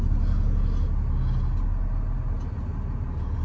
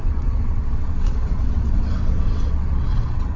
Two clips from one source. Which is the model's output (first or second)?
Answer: second